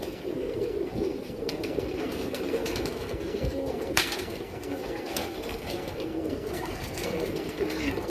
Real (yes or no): no